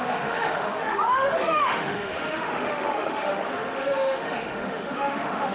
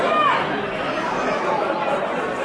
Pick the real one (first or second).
second